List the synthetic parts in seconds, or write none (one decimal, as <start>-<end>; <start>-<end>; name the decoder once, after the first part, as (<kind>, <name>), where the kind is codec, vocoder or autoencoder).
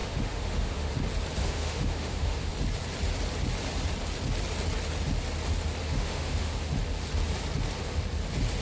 0.0-0.9 (autoencoder, DAC-VAE); 1.4-2.5; 5.8-6.7